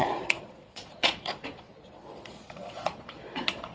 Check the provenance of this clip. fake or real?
fake